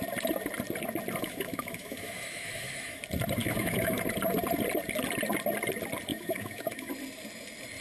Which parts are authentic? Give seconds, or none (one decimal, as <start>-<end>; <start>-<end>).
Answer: 0.0-1.2; 3.0-3.4; 4.0-6.1; 6.9-7.8